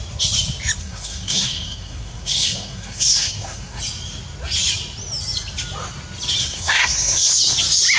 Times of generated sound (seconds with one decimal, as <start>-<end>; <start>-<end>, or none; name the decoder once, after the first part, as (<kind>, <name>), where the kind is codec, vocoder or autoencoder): 0.8-3.8 (codec, SNAC); 6.4-7.3